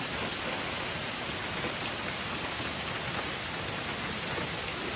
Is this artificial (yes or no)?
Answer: no